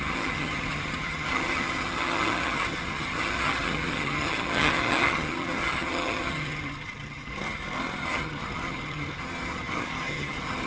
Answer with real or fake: fake